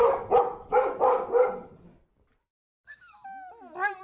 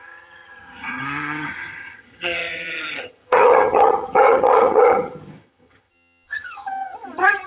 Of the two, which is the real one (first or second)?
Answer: first